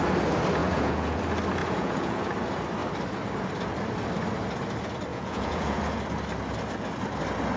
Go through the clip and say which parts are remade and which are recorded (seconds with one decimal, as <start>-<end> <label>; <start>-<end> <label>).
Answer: 0.0-0.6 recorded; 0.6-1.2 remade; 1.2-1.6 recorded; 1.6-2.3 remade; 2.3-5.1 recorded; 5.1-5.9 remade; 5.9-7.6 recorded